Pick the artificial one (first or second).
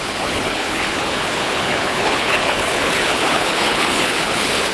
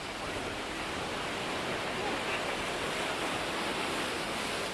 first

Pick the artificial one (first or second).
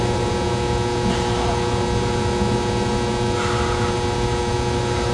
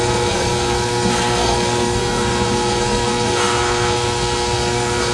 second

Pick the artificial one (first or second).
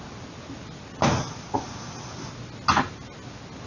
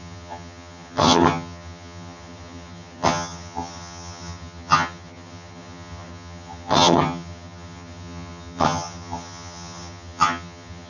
second